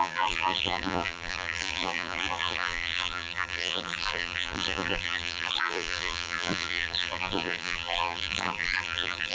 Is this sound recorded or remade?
remade